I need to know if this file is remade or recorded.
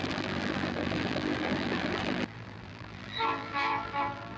remade